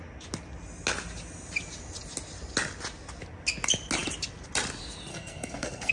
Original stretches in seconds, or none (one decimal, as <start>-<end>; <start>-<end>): 0.0-5.1